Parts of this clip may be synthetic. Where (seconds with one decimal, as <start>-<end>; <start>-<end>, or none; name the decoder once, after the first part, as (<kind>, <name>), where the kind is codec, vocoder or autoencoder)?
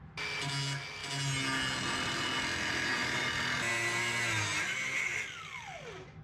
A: none